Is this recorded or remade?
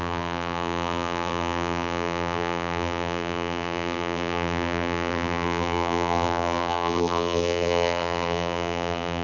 remade